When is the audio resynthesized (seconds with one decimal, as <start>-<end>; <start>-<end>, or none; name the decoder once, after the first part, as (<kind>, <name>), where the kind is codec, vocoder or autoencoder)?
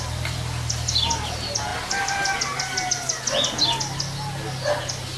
none